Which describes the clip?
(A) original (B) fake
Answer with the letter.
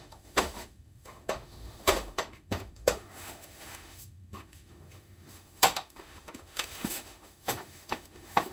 B